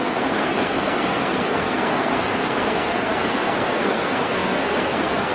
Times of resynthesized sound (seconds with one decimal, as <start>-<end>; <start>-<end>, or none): 0.0-5.3

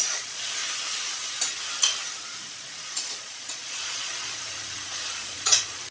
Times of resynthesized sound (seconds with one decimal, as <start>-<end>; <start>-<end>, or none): 0.0-0.6; 2.2-5.9

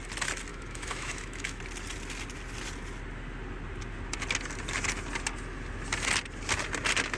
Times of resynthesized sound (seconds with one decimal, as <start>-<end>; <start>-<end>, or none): 0.5-1.6

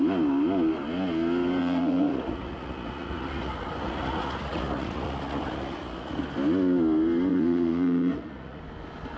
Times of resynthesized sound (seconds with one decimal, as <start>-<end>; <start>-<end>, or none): 1.6-6.2; 7.3-8.6

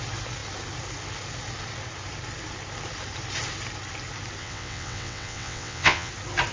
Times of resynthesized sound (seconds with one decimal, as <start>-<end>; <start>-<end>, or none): 4.4-6.1

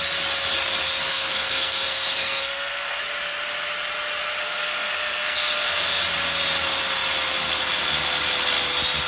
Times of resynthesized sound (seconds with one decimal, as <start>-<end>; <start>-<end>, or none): 1.1-3.0; 4.4-6.0

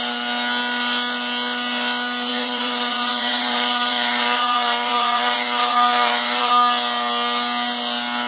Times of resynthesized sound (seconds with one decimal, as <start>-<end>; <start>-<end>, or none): 2.3-6.5